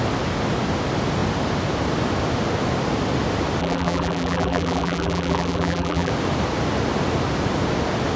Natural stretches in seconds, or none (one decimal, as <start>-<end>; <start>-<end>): 0.0-3.6; 6.1-8.2